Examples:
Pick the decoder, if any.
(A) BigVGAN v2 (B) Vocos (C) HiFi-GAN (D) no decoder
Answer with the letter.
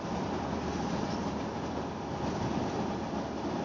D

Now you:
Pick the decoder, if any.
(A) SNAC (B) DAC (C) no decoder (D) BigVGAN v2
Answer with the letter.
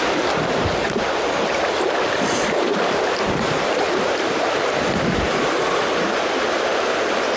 D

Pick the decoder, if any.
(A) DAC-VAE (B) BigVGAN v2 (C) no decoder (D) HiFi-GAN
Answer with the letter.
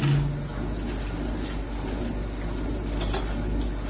C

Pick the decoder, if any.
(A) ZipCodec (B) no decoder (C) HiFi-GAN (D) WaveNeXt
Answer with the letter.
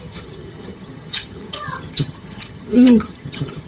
C